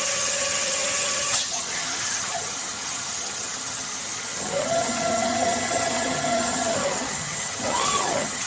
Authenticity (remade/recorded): remade